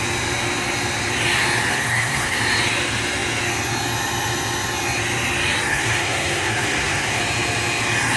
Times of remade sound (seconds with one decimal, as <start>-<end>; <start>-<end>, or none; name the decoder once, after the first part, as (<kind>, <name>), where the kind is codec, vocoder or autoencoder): 1.7-2.4 (codec, SNAC); 5.7-7.2